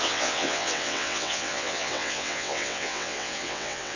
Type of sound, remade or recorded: remade